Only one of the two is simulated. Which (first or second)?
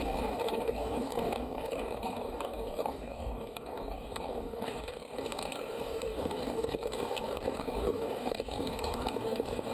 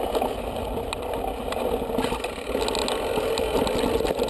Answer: first